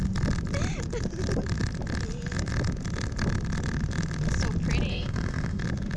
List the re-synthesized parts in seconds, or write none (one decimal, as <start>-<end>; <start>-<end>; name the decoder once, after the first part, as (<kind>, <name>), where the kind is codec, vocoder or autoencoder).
4.9-5.6 (autoencoder, DAC-VAE)